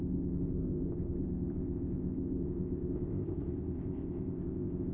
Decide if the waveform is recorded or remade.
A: remade